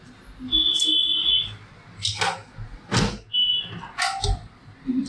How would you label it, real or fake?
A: real